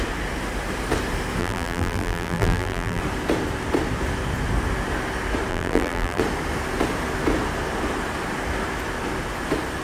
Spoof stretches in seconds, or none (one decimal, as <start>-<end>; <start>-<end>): 1.4-3.0; 5.5-6.2